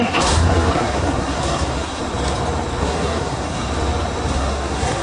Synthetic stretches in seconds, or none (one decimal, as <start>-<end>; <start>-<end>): 0.0-2.0; 2.8-3.7; 4.3-5.0